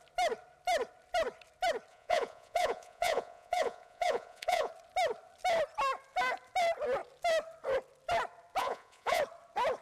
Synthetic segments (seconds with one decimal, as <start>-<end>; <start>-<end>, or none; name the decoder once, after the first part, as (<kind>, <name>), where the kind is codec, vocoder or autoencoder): 1.9-4.7 (vocoder, Vocos); 8.6-9.2